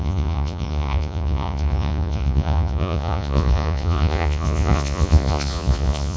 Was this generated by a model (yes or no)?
yes